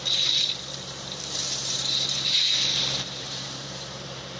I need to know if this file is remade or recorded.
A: remade